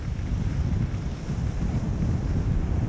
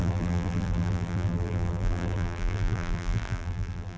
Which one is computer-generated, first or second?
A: second